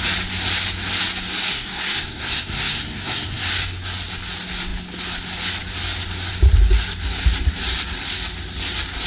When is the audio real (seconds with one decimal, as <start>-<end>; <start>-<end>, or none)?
0.0-1.5; 3.4-9.1